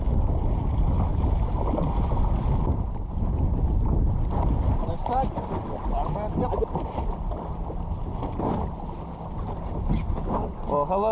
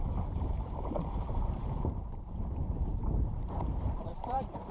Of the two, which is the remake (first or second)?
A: second